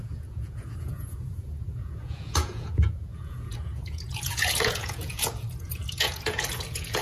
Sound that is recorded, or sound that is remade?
remade